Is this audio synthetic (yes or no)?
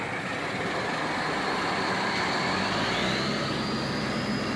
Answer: no